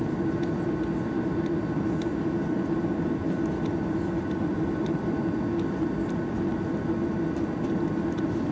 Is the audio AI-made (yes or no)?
no